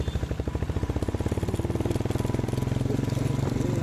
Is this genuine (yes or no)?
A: yes